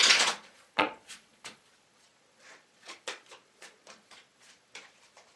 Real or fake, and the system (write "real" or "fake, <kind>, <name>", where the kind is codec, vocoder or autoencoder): fake, vocoder, Vocos